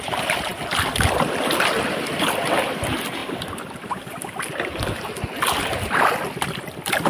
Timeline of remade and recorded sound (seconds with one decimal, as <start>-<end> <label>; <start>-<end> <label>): 0.0-7.1 recorded